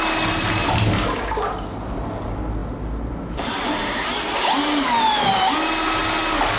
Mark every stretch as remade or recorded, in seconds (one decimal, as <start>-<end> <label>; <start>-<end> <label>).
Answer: 0.0-6.6 recorded